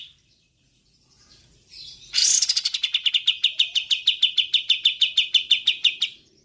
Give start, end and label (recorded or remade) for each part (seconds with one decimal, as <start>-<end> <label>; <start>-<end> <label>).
0.0-2.2 remade; 2.2-3.1 recorded; 3.1-4.0 remade; 4.0-5.3 recorded; 5.3-6.4 remade